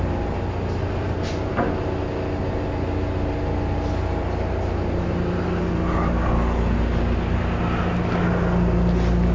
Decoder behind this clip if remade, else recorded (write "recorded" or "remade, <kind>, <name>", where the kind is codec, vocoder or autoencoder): recorded